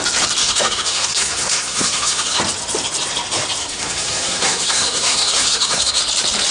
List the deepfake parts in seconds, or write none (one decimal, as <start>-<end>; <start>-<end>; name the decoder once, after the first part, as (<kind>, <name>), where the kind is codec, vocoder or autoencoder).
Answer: 0.4-2.4 (codec, SNAC); 3.6-6.0